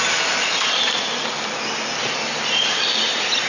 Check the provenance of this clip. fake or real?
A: real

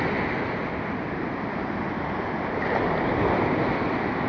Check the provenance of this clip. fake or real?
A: real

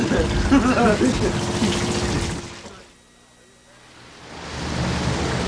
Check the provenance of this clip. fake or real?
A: real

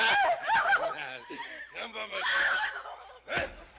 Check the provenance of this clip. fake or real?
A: real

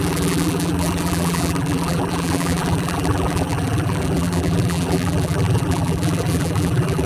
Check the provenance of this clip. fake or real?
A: fake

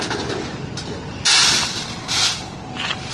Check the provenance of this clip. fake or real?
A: real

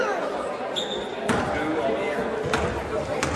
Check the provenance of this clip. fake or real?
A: real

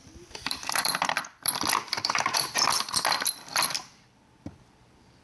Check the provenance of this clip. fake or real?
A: fake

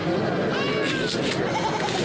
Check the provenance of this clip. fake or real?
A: real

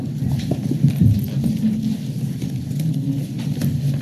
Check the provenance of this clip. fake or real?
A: real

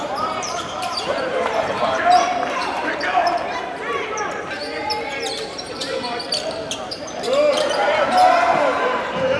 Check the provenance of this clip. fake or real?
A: fake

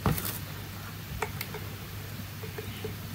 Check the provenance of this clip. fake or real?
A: real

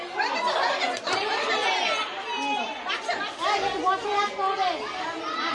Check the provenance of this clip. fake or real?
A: real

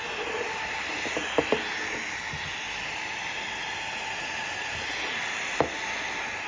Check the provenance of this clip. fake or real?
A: real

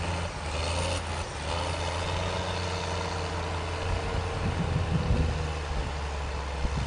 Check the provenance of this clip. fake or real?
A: real